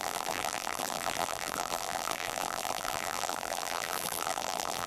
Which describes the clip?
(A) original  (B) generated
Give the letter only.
B